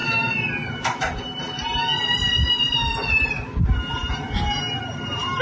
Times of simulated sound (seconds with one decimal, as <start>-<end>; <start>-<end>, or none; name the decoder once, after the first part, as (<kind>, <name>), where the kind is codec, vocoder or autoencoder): none